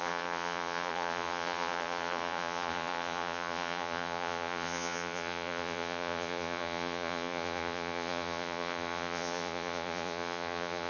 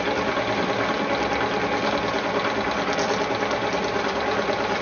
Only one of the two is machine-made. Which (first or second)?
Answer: first